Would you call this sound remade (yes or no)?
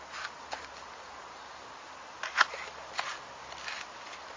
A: no